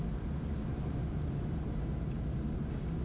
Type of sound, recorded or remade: recorded